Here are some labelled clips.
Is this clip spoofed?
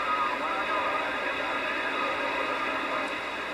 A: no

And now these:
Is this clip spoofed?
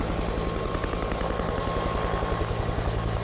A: no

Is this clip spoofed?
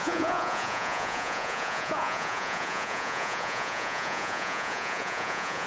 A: yes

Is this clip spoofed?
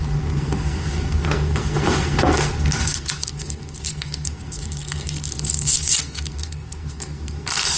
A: yes